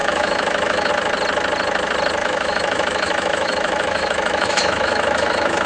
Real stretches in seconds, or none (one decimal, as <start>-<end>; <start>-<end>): 0.9-2.2